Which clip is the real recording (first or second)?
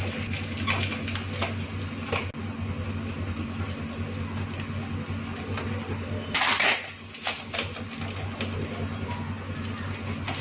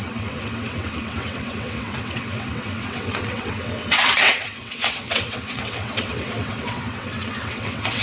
first